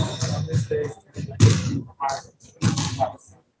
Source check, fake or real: real